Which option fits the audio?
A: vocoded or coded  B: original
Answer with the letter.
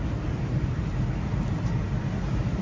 B